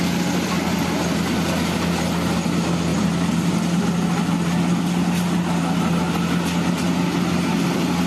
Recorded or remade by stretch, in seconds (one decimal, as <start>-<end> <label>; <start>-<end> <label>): 0.0-2.9 recorded; 2.9-3.8 remade; 3.8-8.1 recorded